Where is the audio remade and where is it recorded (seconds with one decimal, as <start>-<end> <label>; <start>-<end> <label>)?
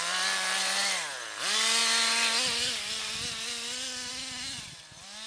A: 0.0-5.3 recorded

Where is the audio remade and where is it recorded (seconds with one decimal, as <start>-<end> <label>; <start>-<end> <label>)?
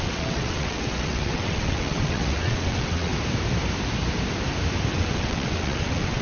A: 0.0-3.1 remade; 3.1-4.9 recorded; 4.9-6.2 remade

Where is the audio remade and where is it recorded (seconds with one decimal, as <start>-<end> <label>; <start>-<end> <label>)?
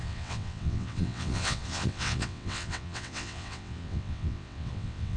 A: 0.0-5.2 remade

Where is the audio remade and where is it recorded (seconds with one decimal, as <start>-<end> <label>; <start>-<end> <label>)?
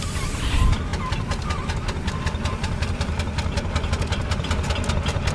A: 0.0-5.3 recorded